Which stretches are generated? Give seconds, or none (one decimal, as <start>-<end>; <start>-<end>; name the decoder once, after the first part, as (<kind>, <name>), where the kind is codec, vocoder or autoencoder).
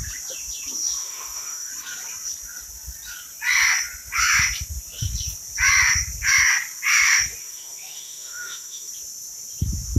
1.0-1.7 (autoencoder, DAC-VAE); 7.4-8.9